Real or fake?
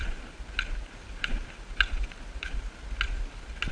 real